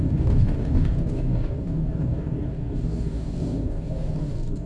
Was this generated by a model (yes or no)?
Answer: yes